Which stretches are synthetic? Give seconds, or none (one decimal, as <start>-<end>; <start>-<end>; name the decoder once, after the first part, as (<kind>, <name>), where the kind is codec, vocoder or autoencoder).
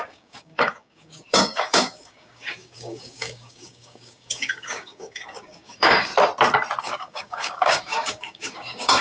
0.0-6.1 (codec, DAC); 6.8-9.0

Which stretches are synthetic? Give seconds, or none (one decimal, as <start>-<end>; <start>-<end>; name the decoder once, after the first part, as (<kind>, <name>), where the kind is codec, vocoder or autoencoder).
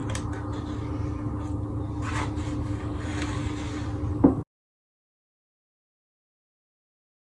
2.6-3.4 (codec, DAC); 4.1-7.3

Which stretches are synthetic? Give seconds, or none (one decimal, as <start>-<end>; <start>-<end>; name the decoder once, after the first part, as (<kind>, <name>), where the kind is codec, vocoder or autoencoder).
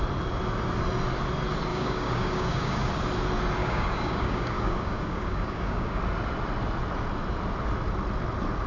1.7-2.9 (codec, DAC); 3.6-6.0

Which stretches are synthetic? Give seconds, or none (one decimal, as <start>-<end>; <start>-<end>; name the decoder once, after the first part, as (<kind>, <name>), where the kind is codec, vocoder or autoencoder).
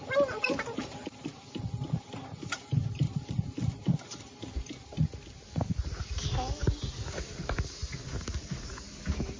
none